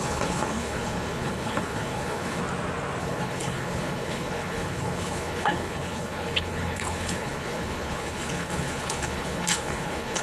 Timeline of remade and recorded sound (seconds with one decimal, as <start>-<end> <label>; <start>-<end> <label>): 0.0-2.4 remade; 2.4-3.0 recorded; 3.0-10.2 remade